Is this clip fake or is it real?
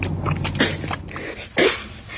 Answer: real